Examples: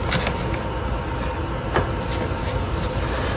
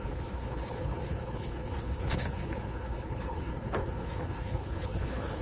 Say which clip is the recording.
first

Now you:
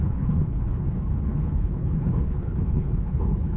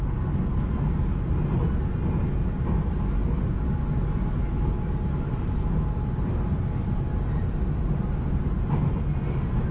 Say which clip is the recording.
second